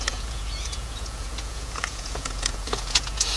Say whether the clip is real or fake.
fake